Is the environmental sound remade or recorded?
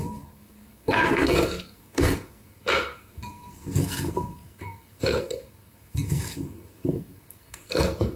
remade